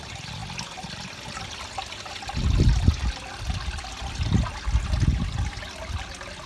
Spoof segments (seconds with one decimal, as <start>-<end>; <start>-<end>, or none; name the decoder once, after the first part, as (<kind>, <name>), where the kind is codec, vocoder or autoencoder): none